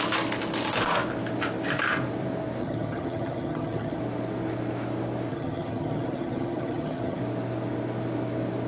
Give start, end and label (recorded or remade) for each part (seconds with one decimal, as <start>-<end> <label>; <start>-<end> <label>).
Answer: 0.0-2.6 recorded; 2.6-4.0 remade; 4.0-5.3 recorded; 5.3-7.2 remade; 7.2-8.7 recorded